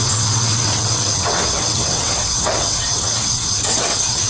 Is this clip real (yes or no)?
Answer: no